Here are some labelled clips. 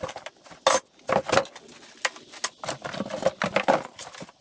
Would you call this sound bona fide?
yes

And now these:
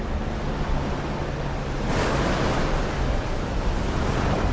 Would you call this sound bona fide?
yes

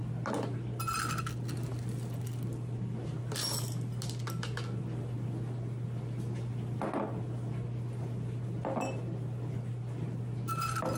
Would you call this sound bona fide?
yes